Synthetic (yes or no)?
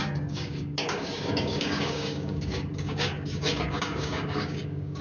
yes